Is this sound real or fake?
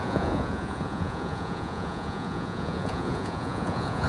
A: fake